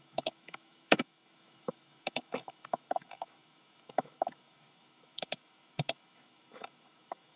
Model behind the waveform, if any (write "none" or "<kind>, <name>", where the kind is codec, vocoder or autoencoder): autoencoder, DAC-VAE